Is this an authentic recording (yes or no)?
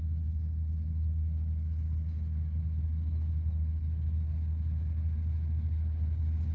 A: yes